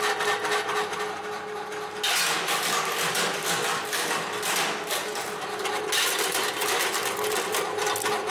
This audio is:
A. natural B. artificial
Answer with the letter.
A